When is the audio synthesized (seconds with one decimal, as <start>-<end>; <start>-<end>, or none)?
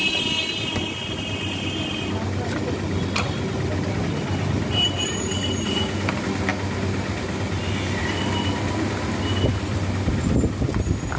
none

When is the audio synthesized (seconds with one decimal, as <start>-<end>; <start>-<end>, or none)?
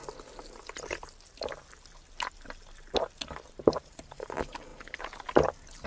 3.5-4.7